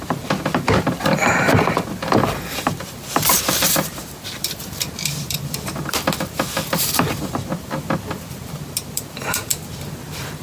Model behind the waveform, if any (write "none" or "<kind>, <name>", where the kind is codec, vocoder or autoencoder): vocoder, BigVGAN v2